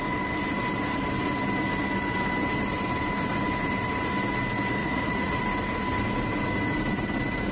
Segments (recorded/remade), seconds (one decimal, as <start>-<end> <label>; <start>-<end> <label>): 0.0-4.8 recorded; 4.8-5.4 remade; 5.4-7.5 recorded